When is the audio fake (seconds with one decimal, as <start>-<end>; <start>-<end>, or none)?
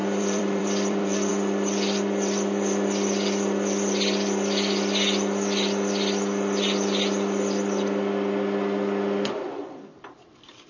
0.0-1.3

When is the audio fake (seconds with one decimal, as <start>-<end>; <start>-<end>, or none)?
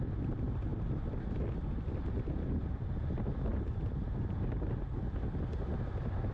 3.5-4.9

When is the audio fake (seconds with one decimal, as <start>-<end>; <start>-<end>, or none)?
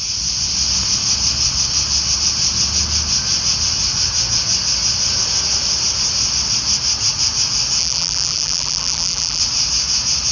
7.8-9.4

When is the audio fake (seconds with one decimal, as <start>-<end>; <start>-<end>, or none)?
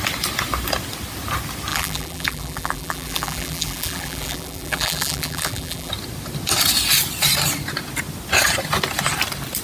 1.7-5.9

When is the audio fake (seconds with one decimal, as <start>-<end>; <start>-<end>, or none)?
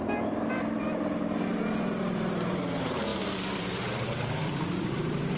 0.0-5.4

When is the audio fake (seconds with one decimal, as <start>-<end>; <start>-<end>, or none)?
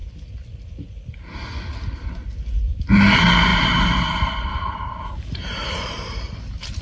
3.5-6.8